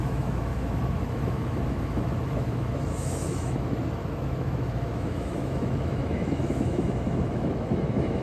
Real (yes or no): no